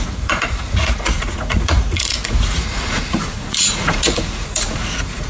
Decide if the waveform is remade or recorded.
remade